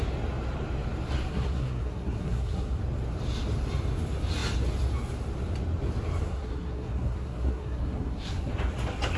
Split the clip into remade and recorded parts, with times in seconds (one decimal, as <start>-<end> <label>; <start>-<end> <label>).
0.0-1.3 recorded; 1.3-2.8 remade; 2.8-6.2 recorded; 6.2-8.5 remade; 8.5-9.2 recorded